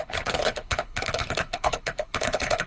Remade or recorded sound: remade